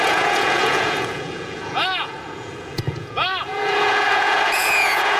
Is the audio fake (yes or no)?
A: yes